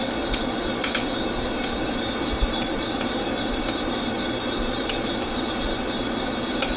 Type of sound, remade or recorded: recorded